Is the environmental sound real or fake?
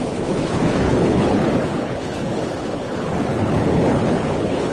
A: fake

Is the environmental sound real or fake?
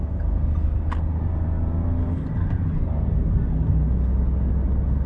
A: real